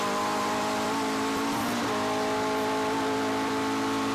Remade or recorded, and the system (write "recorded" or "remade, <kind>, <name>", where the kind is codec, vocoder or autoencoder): remade, vocoder, BigVGAN v2